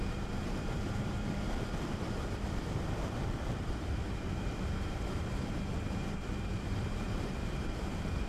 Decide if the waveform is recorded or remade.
remade